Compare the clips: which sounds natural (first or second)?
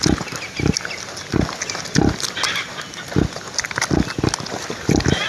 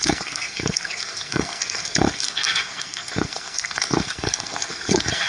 first